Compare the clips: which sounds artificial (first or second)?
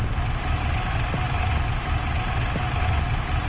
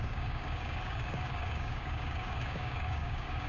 second